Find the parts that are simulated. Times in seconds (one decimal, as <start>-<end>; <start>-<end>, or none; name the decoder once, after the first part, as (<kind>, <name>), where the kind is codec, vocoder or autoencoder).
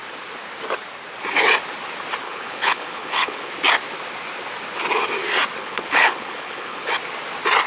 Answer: 2.2-3.5 (codec, HILCodec); 5.6-6.9